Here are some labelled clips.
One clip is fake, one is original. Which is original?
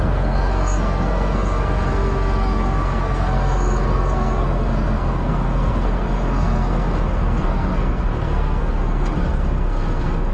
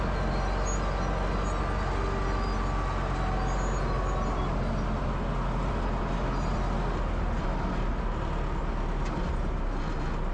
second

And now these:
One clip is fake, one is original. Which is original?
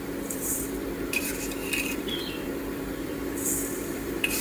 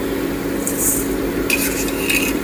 second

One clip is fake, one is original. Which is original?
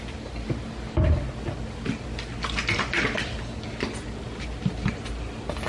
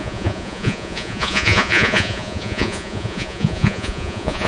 first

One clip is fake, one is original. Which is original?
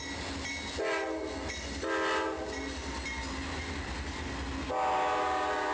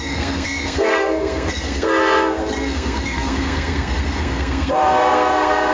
first